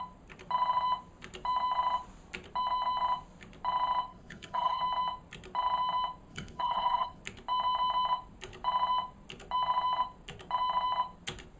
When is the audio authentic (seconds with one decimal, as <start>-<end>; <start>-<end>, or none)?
0.0-4.1; 4.8-6.3; 7.2-11.6

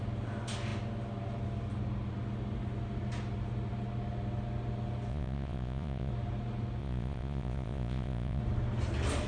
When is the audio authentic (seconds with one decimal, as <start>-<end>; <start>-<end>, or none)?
0.0-5.1; 6.1-6.8; 8.4-9.3